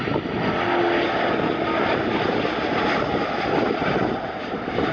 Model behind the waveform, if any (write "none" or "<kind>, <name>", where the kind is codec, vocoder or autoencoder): none